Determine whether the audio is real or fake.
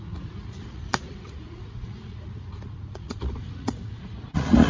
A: fake